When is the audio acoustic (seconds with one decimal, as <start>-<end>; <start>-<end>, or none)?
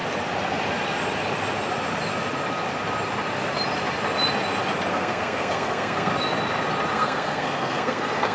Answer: 0.0-4.9; 6.1-6.9